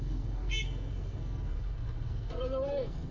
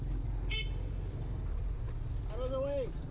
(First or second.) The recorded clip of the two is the second